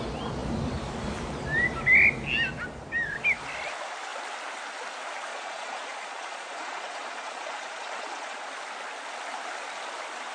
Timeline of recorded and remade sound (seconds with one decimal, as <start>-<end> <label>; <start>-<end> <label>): 0.0-5.3 recorded; 5.3-8.5 remade; 8.5-10.3 recorded